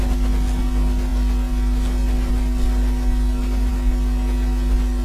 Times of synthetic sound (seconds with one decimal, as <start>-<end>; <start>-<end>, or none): none